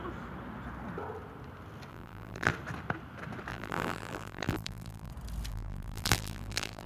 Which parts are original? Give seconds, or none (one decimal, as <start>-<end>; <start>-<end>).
0.0-1.9; 2.5-3.5; 5.1-5.5